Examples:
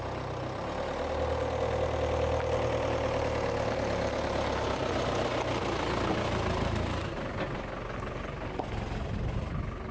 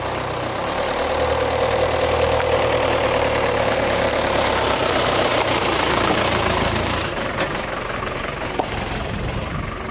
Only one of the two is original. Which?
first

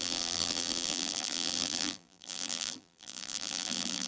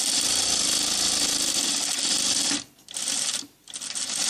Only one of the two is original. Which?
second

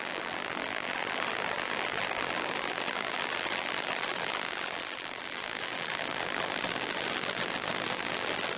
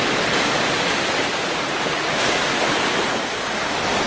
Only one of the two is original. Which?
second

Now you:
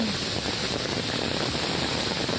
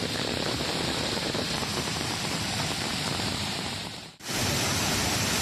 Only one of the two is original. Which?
first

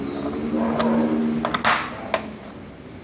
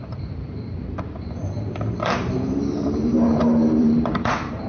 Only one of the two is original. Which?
first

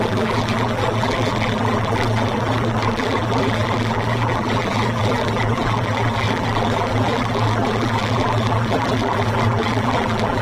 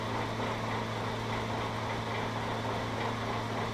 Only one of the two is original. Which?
second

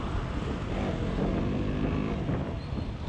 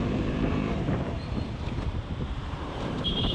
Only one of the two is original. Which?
first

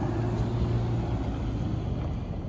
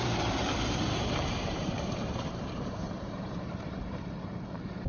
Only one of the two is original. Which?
first